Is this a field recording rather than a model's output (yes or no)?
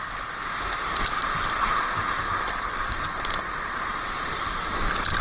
yes